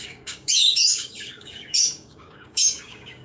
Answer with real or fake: fake